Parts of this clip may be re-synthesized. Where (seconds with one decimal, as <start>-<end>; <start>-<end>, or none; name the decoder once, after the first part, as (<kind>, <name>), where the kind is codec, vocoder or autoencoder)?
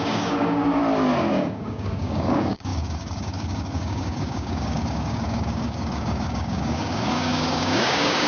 0.0-0.8 (codec, DAC); 1.3-8.3